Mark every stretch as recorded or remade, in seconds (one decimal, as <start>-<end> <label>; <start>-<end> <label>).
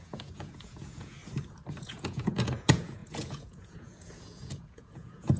0.0-1.2 remade; 1.2-1.8 recorded; 1.8-5.4 remade